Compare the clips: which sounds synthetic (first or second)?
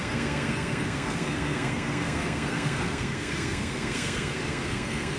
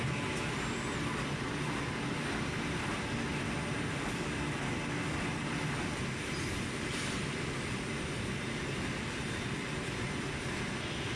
first